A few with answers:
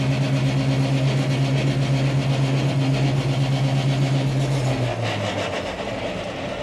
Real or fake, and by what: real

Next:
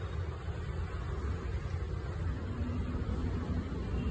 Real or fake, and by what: real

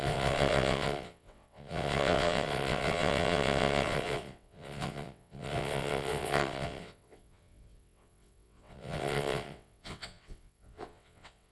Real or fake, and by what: fake, vocoder, WaveNeXt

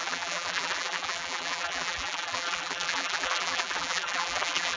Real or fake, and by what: fake, vocoder, BigVGAN v2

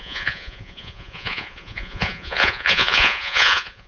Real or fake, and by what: fake, vocoder, Vocos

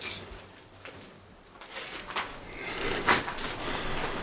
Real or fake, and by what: real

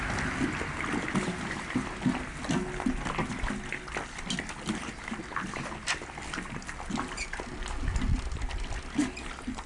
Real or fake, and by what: real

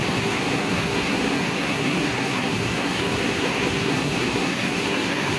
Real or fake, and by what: fake, codec, SNAC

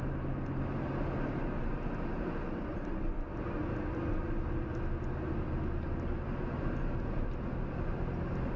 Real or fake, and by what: real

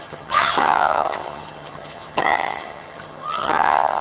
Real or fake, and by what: fake, vocoder, HiFi-GAN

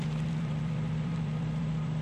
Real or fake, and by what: fake, vocoder, BigVGAN v2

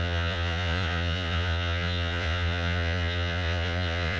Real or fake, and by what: fake, vocoder, Vocos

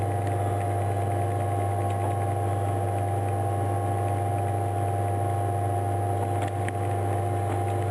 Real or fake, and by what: real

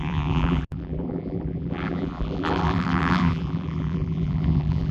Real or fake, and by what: fake, vocoder, BigVGAN v2